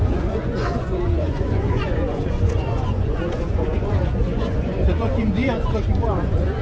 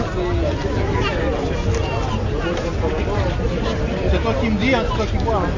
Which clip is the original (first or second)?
second